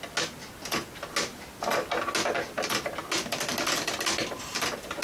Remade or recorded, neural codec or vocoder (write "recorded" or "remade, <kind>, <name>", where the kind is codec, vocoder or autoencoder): recorded